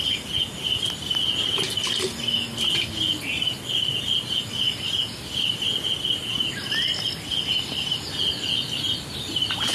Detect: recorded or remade recorded